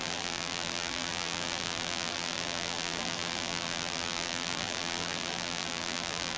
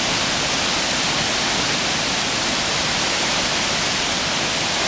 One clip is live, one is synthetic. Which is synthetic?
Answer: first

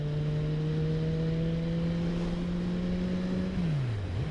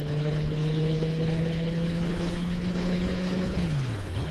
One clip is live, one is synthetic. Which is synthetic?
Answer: second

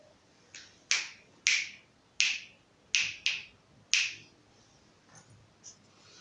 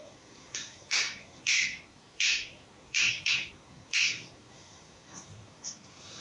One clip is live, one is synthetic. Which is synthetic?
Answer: second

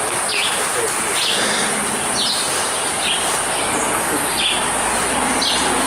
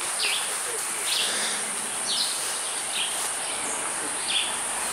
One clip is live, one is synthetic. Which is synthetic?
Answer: second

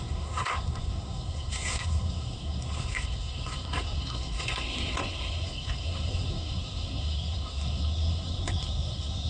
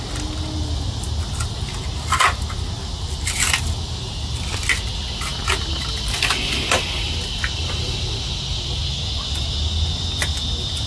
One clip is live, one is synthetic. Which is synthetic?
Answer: first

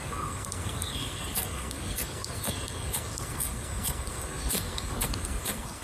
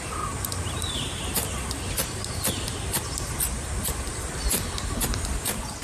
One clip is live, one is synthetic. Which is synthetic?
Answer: first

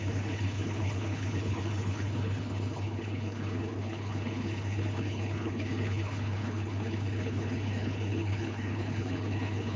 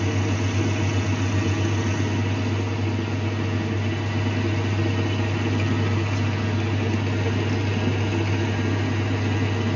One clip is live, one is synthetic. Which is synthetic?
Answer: first